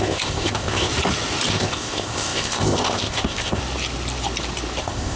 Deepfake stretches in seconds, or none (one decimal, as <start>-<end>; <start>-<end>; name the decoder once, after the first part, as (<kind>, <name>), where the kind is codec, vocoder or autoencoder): 0.0-0.9 (codec, ZipCodec); 1.5-3.6; 4.8-5.2